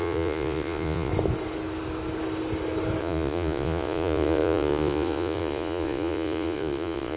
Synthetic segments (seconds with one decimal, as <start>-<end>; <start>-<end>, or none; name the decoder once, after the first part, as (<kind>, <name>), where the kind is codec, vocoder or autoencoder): 0.0-1.1 (vocoder, Vocos); 3.0-7.2